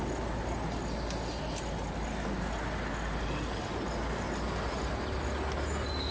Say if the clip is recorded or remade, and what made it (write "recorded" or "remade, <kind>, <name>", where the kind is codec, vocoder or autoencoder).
recorded